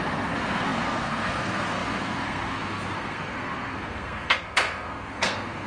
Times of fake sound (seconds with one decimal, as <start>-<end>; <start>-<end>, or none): 0.0-5.7